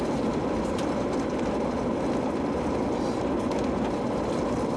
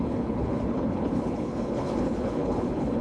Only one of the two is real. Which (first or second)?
first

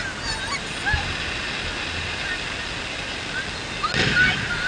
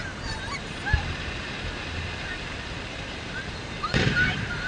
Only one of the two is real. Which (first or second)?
first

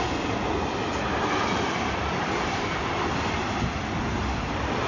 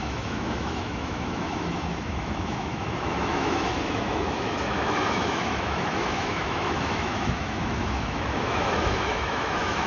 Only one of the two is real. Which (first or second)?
first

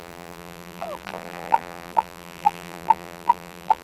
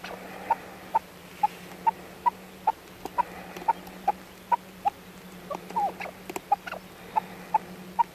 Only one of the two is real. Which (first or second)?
second